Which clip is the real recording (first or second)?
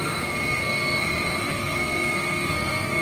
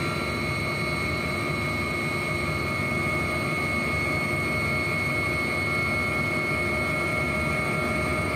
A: second